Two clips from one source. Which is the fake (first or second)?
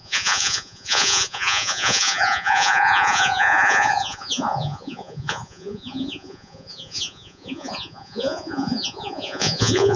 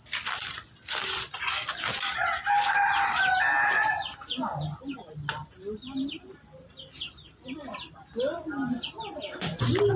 first